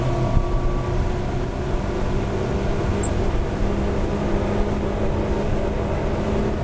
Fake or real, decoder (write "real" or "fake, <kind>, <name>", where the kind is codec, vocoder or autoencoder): real